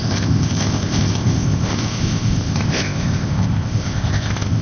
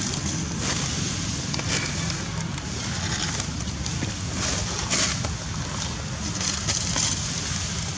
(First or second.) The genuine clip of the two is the second